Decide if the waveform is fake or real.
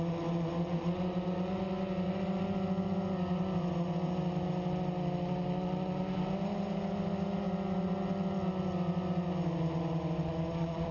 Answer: real